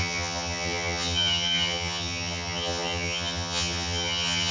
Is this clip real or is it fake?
fake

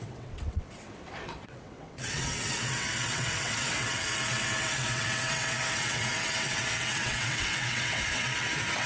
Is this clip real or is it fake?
fake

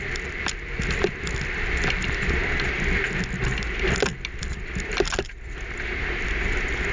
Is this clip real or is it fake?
real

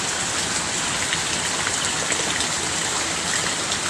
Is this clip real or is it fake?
real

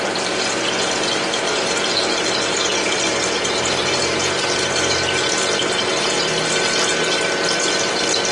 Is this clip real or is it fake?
fake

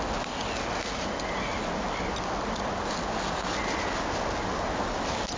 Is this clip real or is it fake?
real